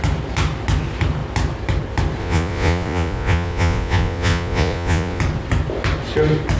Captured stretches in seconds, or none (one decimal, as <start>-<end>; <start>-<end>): 0.0-2.2; 5.2-6.6